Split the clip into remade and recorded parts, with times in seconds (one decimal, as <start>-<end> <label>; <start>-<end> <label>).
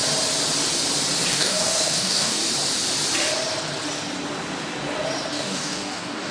0.0-1.3 recorded; 1.3-2.4 remade; 2.4-5.3 recorded; 5.3-6.3 remade